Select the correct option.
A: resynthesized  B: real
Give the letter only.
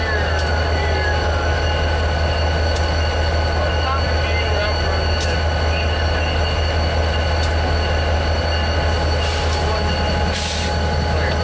B